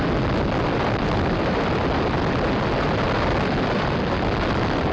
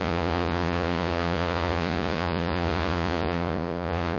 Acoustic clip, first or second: first